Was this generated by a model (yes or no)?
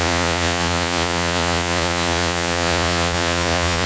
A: yes